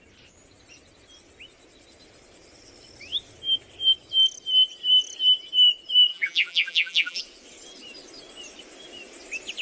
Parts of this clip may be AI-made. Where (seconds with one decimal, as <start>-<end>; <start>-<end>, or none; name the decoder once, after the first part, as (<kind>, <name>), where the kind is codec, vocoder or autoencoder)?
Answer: 6.1-7.2 (vocoder, BigVGAN v2)

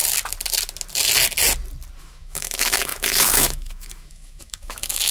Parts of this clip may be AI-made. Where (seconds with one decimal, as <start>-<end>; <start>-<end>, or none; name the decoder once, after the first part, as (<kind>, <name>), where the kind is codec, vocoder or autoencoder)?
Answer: 2.0-5.1 (autoencoder, DAC-VAE)

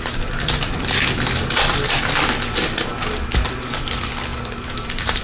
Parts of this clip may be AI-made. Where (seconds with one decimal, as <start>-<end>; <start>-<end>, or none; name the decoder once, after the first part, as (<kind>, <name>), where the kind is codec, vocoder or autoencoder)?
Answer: 4.3-5.2 (vocoder, BigVGAN v2)

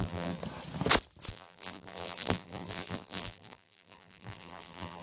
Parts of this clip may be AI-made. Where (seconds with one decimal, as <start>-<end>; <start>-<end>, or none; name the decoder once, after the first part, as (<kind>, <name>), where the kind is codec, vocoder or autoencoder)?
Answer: 0.0-0.4 (vocoder, BigVGAN v2); 1.3-5.0

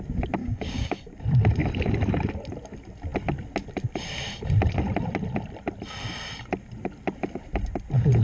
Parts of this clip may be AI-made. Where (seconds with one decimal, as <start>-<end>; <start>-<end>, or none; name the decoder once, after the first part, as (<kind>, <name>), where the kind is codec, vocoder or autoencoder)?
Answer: 0.4-1.0 (codec, DAC)

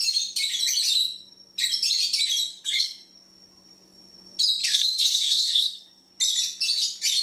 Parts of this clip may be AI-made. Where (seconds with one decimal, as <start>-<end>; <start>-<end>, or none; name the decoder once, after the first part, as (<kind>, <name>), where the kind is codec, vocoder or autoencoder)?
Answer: 2.5-3.1 (codec, SNAC); 4.6-6.1